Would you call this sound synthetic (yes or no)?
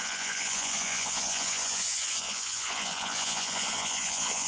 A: yes